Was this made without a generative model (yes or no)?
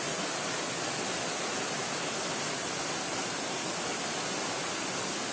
yes